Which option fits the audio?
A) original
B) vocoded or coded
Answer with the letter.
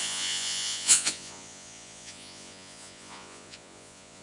B